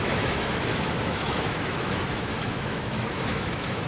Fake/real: fake